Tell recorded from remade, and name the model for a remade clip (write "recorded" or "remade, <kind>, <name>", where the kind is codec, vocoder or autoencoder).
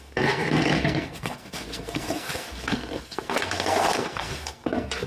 remade, codec, SNAC